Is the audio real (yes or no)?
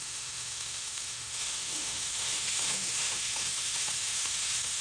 no